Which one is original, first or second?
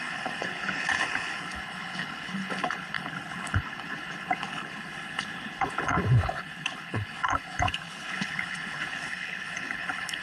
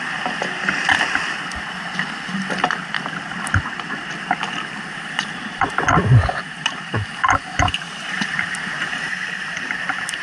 second